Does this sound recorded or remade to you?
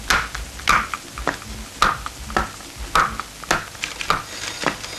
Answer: recorded